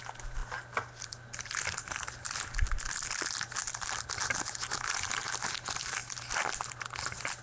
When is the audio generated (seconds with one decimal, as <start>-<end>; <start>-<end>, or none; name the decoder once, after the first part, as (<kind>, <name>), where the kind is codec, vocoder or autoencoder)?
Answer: 3.6-4.3 (vocoder, BigVGAN v2); 6.0-7.4